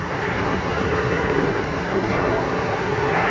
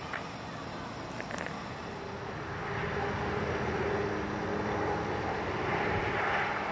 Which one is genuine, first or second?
second